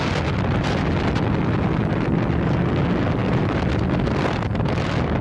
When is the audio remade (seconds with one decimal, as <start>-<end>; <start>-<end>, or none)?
none